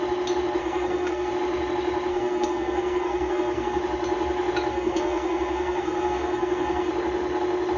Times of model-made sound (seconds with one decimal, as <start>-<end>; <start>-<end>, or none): 0.6-1.3; 2.1-3.8; 4.7-6.9